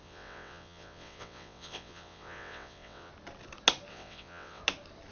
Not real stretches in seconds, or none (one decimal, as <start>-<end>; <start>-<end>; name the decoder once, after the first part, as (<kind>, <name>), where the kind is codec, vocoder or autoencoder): 0.0-3.1 (vocoder, WaveNeXt); 3.9-4.6